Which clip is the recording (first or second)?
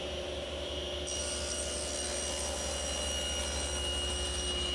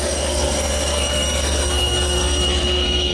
first